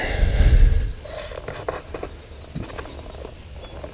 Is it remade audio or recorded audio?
recorded